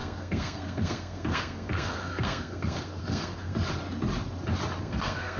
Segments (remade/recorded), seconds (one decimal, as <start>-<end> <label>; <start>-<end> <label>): 0.0-3.5 remade; 3.5-4.8 recorded; 4.8-5.4 remade